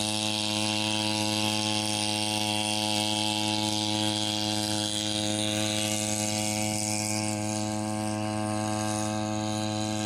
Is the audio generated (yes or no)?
no